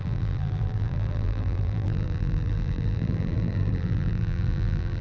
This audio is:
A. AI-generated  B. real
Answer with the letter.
A